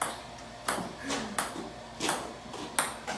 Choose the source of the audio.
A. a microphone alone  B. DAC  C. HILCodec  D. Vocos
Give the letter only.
A